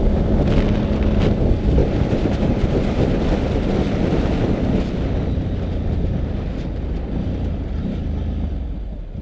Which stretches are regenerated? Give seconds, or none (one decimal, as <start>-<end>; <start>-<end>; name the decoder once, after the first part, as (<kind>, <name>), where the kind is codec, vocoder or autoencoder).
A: 1.8-3.2 (vocoder, BigVGAN v2)